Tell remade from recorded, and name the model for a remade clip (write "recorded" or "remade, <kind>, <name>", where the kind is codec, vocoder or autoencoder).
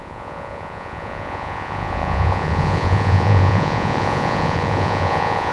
remade, vocoder, Vocos